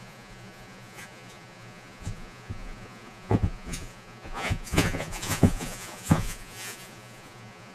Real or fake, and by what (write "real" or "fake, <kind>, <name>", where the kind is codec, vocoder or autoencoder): fake, vocoder, Vocos